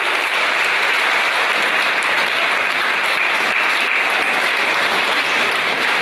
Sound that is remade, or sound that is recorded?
remade